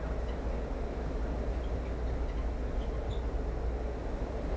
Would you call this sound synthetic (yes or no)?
no